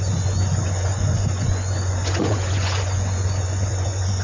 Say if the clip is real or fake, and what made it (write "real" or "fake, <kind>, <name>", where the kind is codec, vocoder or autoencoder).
fake, vocoder, Vocos